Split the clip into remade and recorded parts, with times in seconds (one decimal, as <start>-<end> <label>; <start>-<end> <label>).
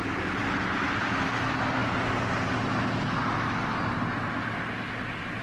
0.0-5.4 recorded